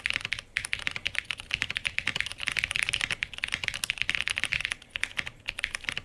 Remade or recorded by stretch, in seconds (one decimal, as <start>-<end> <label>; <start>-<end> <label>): 0.0-6.0 recorded

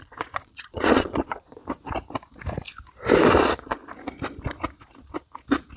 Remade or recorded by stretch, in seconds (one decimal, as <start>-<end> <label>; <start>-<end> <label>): 0.0-1.6 remade; 1.6-3.4 recorded; 3.4-3.8 remade; 3.8-5.8 recorded

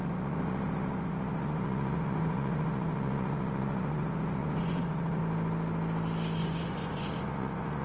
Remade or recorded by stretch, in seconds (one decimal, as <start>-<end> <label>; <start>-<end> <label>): 0.0-5.2 remade; 5.2-6.4 recorded; 6.4-7.8 remade

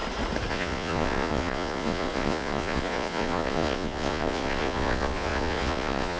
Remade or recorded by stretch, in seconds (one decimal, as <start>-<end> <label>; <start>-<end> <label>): 0.0-0.5 recorded; 0.5-6.2 remade

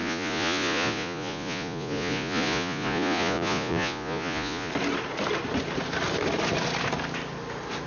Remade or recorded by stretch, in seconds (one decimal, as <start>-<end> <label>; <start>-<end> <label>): 0.0-4.7 remade; 4.7-7.9 recorded

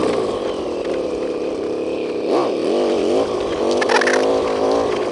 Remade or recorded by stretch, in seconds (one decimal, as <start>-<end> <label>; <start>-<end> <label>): 0.0-5.1 recorded

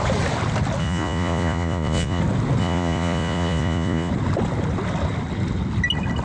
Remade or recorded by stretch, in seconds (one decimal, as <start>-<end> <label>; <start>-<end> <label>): 0.0-0.8 recorded; 0.8-2.2 remade; 2.2-2.6 recorded; 2.6-4.1 remade; 4.1-6.2 recorded

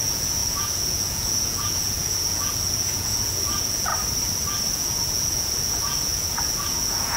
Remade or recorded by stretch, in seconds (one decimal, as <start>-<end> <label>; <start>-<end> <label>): 0.0-3.9 remade; 3.9-4.7 recorded; 4.7-7.2 remade